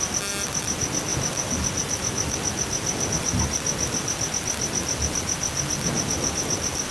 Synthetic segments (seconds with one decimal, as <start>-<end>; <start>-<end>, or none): none